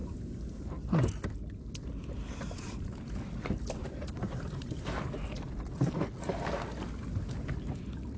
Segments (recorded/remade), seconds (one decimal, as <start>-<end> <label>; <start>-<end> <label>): 0.0-3.8 recorded; 3.8-4.8 remade; 4.8-8.2 recorded